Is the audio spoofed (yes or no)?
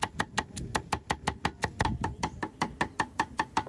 no